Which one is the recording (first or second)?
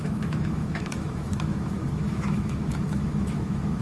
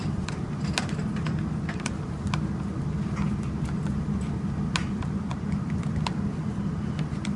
second